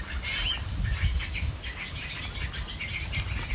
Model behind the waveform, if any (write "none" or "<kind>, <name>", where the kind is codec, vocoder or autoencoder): none